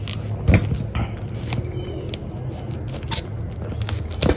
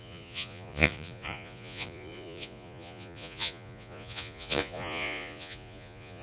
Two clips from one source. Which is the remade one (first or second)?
second